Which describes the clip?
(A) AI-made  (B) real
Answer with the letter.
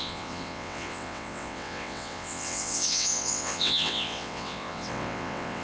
A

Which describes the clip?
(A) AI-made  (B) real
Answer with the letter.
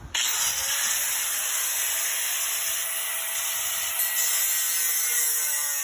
B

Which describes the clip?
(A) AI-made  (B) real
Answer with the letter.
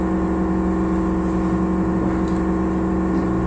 B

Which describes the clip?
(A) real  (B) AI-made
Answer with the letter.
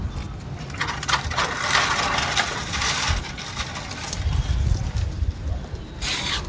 A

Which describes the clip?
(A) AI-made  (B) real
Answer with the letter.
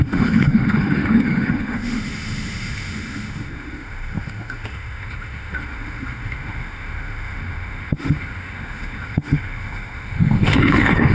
A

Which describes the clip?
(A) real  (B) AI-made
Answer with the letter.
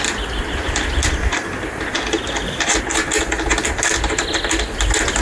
A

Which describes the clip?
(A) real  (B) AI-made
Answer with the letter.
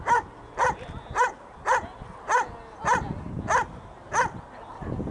A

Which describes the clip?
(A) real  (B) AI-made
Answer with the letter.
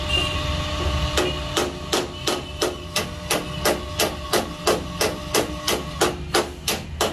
A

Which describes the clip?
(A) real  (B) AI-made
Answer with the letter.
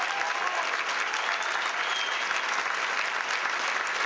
A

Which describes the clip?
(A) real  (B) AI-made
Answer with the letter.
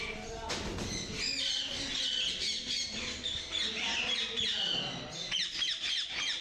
A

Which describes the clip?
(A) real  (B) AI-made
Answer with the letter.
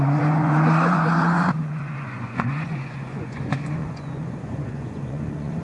B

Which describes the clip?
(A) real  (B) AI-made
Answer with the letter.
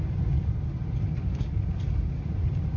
A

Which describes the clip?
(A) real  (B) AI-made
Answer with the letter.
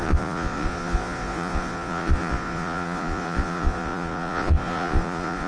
B